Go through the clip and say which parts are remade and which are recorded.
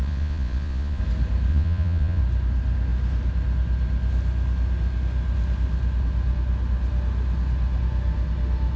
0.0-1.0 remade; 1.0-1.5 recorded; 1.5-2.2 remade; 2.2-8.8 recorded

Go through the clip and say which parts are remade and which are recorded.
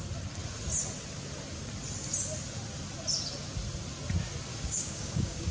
0.0-4.5 recorded; 4.5-5.5 remade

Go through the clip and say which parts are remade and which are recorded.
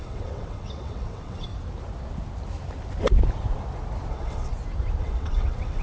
0.0-1.5 remade; 1.5-4.1 recorded; 4.1-4.5 remade; 4.5-5.0 recorded; 5.0-5.8 remade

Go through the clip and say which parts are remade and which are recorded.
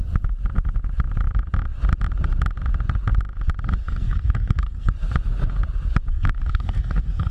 0.0-3.8 recorded; 3.8-4.9 remade; 4.9-6.1 recorded; 6.1-7.3 remade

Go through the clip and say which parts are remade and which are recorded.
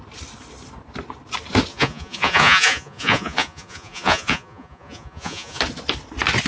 0.0-1.7 recorded; 1.7-5.6 remade; 5.6-6.5 recorded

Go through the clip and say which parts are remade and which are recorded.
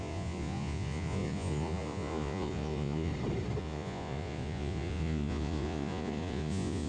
0.0-3.1 remade; 3.1-3.6 recorded; 3.6-6.9 remade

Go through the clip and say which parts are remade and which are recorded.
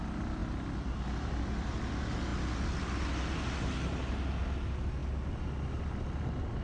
0.0-0.4 recorded; 0.4-1.7 remade; 1.7-6.6 recorded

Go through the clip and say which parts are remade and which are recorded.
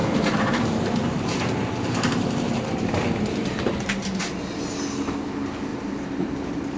0.0-2.7 remade; 2.7-6.8 recorded